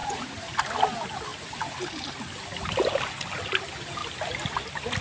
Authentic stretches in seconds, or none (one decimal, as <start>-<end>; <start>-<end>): 0.6-5.0